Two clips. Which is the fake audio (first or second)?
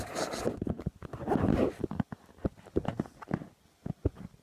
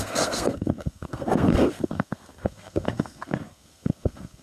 second